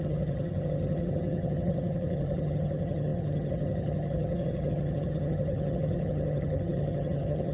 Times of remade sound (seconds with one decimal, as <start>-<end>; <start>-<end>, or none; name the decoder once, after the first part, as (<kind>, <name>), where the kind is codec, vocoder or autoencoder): 0.0-7.5 (vocoder, HiFi-GAN)